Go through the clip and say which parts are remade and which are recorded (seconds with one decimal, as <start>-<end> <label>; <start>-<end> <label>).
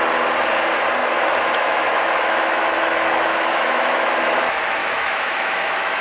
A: 0.0-1.0 recorded; 1.0-4.1 remade; 4.1-4.8 recorded; 4.8-6.0 remade